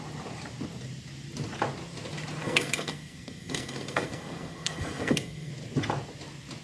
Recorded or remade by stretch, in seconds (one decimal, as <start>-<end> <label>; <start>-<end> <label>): 0.0-2.4 recorded; 2.4-5.5 remade; 5.5-6.6 recorded